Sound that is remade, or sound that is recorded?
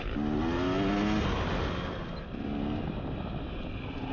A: recorded